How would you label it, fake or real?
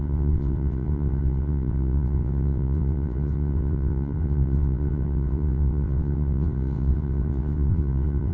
fake